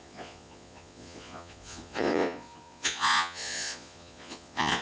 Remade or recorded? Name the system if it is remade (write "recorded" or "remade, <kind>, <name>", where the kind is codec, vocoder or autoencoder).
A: remade, vocoder, Vocos